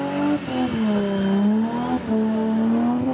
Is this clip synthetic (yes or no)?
no